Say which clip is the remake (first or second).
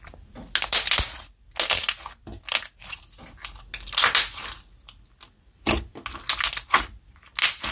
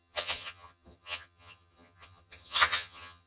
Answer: second